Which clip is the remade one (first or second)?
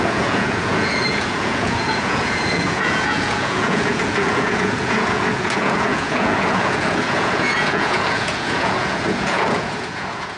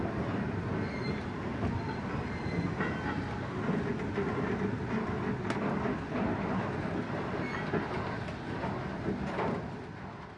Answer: first